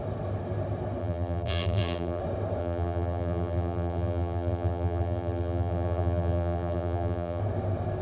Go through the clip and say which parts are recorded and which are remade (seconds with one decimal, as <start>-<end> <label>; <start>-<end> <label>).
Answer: 0.0-1.0 recorded; 1.0-2.2 remade; 2.2-2.6 recorded; 2.6-7.4 remade; 7.4-8.0 recorded